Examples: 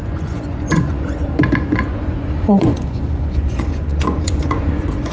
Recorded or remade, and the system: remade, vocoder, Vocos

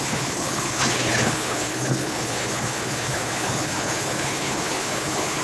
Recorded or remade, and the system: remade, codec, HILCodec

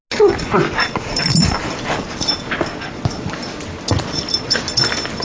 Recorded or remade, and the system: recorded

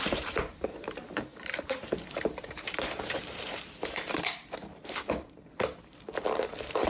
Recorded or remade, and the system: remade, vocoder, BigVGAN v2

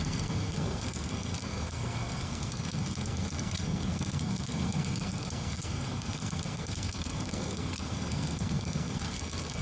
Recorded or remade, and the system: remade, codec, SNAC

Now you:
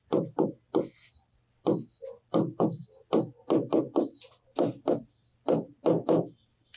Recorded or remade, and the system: recorded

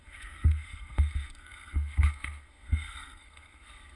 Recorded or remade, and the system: remade, codec, SNAC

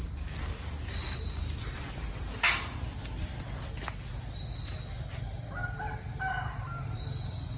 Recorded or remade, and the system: recorded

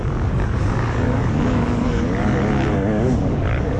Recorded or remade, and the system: remade, codec, DAC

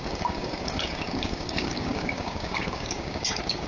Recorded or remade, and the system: remade, codec, DAC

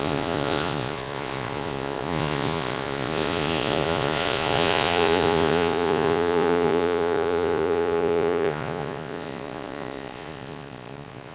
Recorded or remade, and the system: remade, vocoder, Vocos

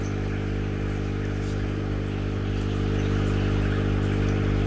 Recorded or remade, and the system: recorded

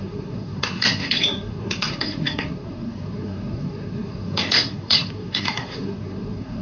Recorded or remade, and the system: remade, codec, SNAC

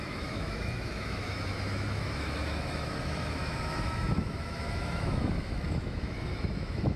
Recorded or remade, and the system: remade, autoencoder, DAC-VAE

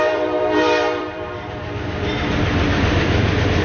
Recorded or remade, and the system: remade, vocoder, BigVGAN v2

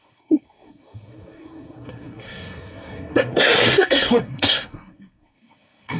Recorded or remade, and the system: remade, codec, SNAC